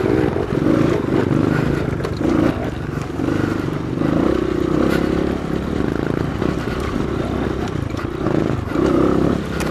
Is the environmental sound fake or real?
real